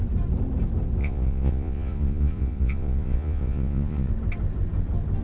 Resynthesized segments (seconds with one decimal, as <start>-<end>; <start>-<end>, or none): 1.0-4.1